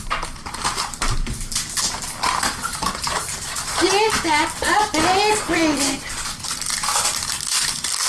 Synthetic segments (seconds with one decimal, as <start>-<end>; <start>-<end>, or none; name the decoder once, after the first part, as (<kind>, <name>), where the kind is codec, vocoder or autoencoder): 0.0-1.5 (vocoder, BigVGAN v2); 2.6-3.9; 7.3-8.1